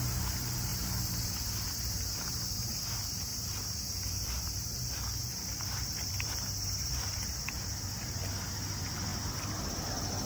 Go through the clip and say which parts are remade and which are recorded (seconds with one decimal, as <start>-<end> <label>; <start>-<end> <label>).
0.0-3.3 recorded; 3.3-7.4 remade; 7.4-9.1 recorded; 9.1-9.9 remade; 9.9-10.3 recorded